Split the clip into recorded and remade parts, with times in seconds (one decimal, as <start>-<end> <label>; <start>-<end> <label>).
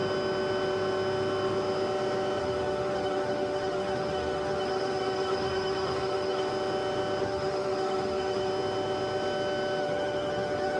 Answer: 0.0-2.4 recorded; 2.4-6.5 remade; 6.5-7.2 recorded; 7.2-8.5 remade; 8.5-9.8 recorded; 9.8-10.8 remade